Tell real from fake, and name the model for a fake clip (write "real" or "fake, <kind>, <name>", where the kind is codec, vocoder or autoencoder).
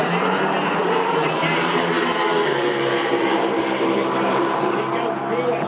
fake, vocoder, BigVGAN v2